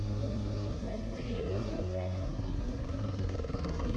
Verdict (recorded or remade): remade